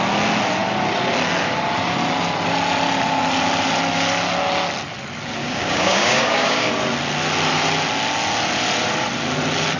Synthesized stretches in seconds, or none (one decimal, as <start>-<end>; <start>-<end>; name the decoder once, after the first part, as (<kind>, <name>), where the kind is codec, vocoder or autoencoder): 5.4-6.7 (codec, DAC)